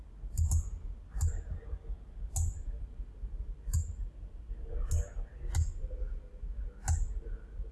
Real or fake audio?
real